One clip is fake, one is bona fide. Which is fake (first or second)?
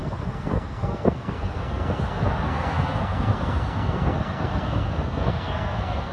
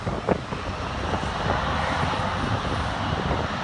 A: first